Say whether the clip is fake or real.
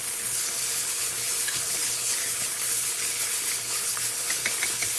fake